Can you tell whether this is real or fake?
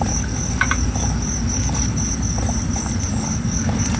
real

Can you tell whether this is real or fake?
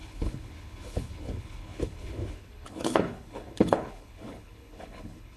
fake